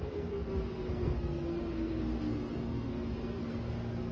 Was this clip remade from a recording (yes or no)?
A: yes